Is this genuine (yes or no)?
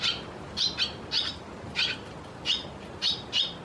yes